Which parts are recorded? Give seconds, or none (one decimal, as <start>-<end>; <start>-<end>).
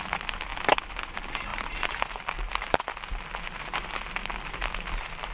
0.0-5.3